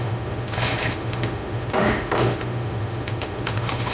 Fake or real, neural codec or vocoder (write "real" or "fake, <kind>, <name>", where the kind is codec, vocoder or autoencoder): fake, autoencoder, DAC-VAE